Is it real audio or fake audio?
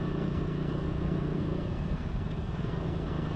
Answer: fake